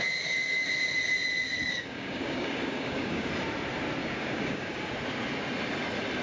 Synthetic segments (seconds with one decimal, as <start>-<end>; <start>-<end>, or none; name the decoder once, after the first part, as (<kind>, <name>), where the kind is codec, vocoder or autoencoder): 1.6-3.3 (codec, DAC); 4.0-4.9